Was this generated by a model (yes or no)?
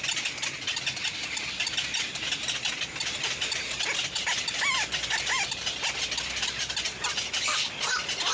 no